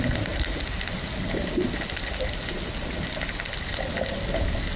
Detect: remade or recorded recorded